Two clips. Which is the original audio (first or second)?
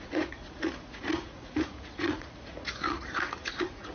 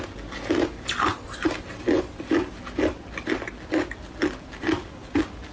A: second